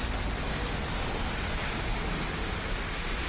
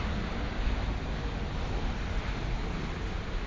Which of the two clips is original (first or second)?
second